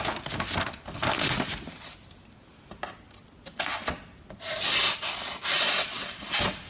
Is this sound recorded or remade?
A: recorded